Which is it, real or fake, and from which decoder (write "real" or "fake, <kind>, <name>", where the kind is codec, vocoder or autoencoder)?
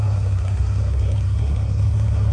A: fake, codec, SNAC